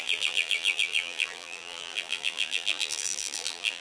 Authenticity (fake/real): fake